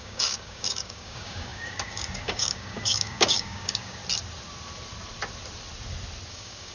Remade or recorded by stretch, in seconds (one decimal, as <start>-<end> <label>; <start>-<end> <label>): 0.0-4.0 remade; 4.0-6.3 recorded; 6.3-6.7 remade